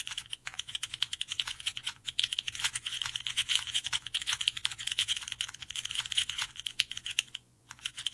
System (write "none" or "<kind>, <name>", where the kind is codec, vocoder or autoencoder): vocoder, Vocos